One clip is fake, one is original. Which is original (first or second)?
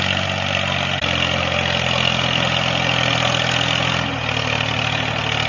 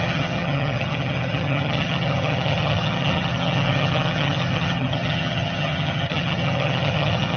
first